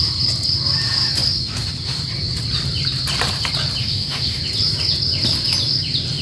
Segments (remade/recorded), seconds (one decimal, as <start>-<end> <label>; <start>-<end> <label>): 0.0-3.8 recorded; 3.8-4.4 remade; 4.4-6.2 recorded